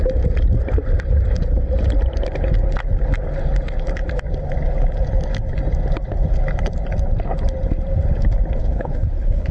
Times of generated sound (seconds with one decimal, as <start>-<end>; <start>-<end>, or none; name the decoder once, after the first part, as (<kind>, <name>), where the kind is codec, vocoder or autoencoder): 8.6-9.5 (codec, HILCodec)